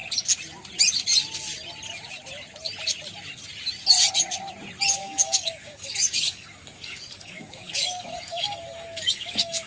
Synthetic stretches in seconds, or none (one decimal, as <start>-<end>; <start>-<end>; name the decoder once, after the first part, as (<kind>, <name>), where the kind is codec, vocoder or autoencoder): 5.0-9.7 (codec, DAC)